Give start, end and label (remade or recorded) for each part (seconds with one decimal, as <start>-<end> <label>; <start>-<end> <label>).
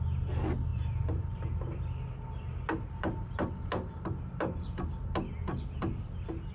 0.0-0.7 recorded; 0.7-1.3 remade; 1.3-6.5 recorded